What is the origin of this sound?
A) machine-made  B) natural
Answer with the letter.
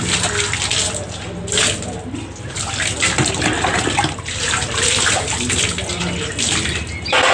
B